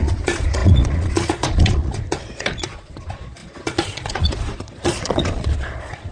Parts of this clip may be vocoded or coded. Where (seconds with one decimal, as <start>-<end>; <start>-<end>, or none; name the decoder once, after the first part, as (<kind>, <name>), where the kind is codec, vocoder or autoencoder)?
0.0-6.1 (vocoder, Vocos)